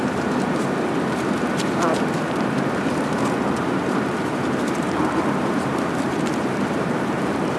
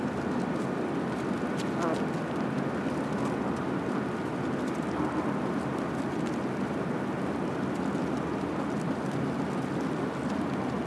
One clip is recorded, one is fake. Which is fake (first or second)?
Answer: first